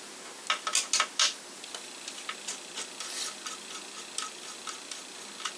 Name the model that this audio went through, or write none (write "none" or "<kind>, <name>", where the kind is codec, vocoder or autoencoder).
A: none